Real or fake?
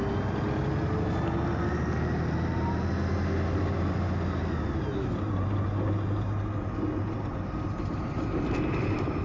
real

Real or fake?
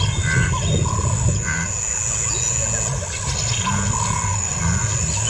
real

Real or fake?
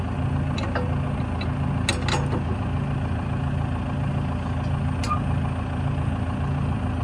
real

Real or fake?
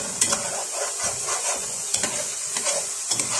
fake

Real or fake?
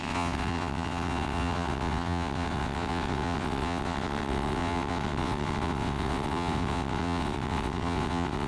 fake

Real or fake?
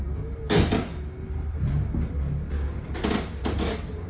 real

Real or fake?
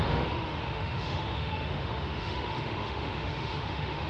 fake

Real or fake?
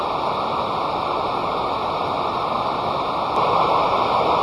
real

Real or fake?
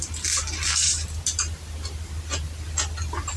real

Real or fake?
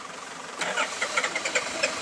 fake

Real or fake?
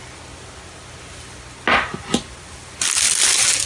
real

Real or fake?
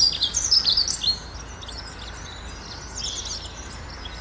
real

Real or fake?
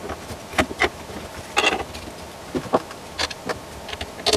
real